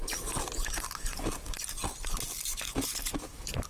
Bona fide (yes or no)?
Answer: yes